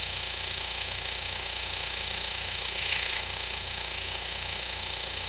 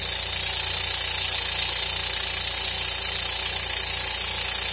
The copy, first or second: first